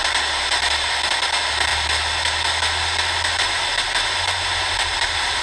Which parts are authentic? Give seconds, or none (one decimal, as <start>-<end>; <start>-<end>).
0.0-5.4